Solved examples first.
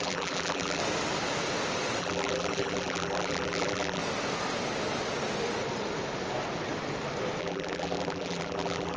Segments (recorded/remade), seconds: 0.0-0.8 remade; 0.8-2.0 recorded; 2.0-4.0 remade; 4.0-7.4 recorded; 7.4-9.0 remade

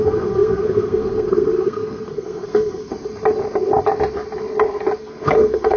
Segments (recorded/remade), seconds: 0.0-2.9 remade; 2.9-5.0 recorded; 5.0-5.8 remade

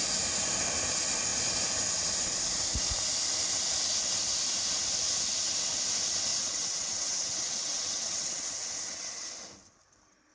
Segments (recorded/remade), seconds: 0.0-6.3 recorded; 6.3-9.3 remade; 9.3-10.3 recorded

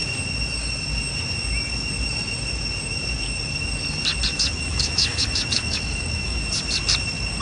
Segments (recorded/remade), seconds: 0.0-4.3 recorded; 4.3-6.4 remade; 6.4-7.4 recorded

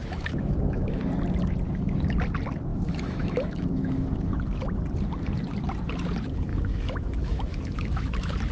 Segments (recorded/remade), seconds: 0.0-1.0 remade; 1.0-2.7 recorded; 2.7-4.4 remade; 4.4-6.5 recorded; 6.5-8.1 remade; 8.1-8.5 recorded

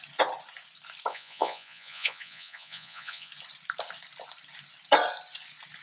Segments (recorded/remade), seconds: 0.0-1.1 recorded; 1.1-3.3 remade; 3.3-5.8 recorded

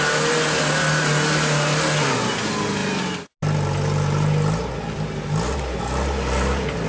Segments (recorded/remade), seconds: 0.0-6.9 recorded

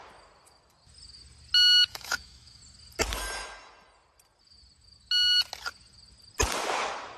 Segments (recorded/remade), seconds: 0.0-1.9 recorded; 1.9-2.6 remade; 2.6-7.2 recorded